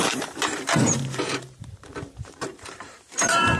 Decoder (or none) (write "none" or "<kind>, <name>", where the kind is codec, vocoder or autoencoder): vocoder, BigVGAN v2